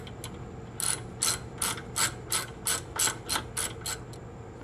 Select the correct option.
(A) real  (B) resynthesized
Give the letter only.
A